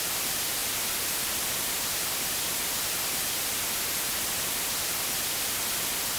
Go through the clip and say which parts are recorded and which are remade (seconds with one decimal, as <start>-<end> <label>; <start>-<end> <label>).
0.0-6.2 recorded